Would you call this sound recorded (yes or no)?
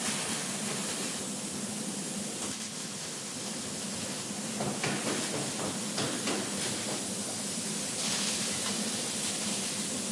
yes